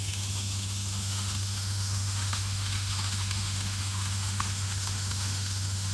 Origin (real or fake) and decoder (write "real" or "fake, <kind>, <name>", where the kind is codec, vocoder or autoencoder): fake, autoencoder, DAC-VAE